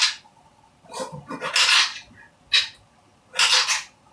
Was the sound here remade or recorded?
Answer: recorded